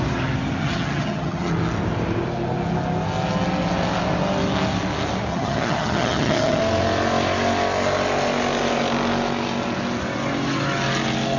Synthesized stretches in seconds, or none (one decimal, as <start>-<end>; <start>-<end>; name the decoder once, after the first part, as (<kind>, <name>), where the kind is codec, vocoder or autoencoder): 0.6-1.5 (vocoder, HiFi-GAN); 5.3-6.6